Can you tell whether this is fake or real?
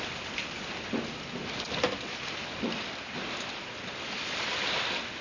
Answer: real